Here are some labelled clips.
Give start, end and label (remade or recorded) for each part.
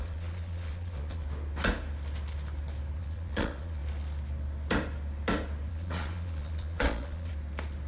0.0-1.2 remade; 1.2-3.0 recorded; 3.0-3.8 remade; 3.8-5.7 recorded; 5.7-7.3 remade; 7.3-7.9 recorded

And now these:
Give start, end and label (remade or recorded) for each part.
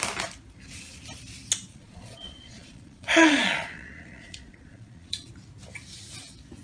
0.0-1.7 recorded; 1.7-5.3 remade; 5.3-6.6 recorded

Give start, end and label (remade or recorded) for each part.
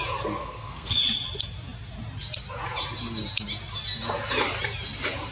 0.0-0.4 recorded; 0.4-1.0 remade; 1.0-5.3 recorded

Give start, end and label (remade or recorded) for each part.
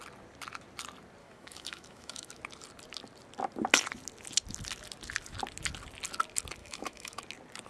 0.0-1.2 recorded; 1.2-2.4 remade; 2.4-6.6 recorded; 6.6-7.2 remade; 7.2-7.7 recorded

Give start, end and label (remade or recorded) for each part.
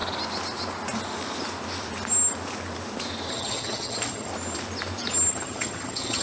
0.0-3.3 recorded; 3.3-4.3 remade; 4.3-5.3 recorded; 5.3-6.2 remade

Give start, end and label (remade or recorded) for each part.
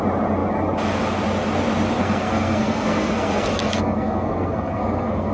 0.0-2.0 recorded; 2.0-5.3 remade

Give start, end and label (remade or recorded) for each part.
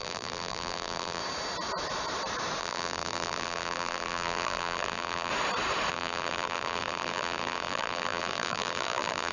0.0-1.2 remade; 1.2-2.6 recorded; 2.6-5.3 remade; 5.3-5.9 recorded; 5.9-9.3 remade